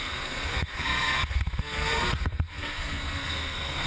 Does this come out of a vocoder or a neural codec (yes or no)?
yes